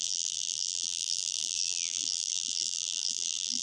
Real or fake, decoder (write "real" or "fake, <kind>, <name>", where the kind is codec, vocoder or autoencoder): fake, vocoder, BigVGAN v2